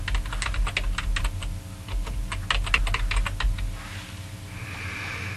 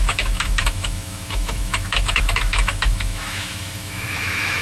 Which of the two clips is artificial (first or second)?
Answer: second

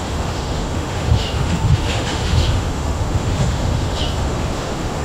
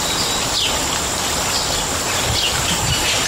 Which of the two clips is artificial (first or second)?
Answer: first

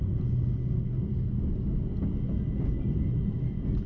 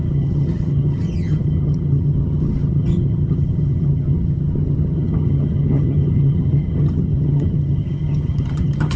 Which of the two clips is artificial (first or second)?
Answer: second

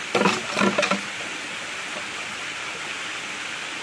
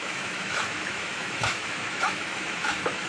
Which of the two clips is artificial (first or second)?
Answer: second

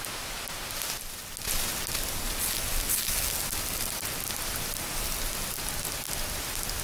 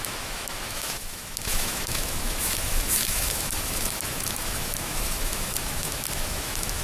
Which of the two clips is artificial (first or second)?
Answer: second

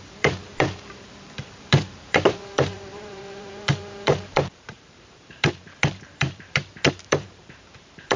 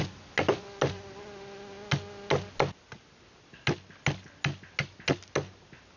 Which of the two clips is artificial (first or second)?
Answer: first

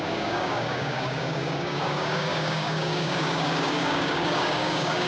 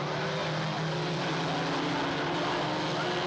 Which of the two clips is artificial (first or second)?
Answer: first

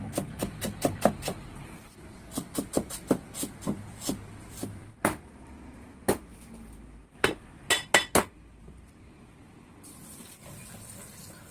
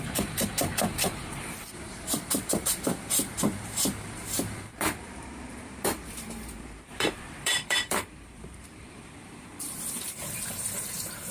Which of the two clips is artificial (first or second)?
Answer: second